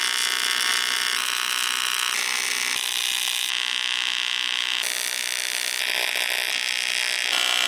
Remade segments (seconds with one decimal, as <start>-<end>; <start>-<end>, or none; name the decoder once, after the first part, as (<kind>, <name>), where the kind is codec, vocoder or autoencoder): none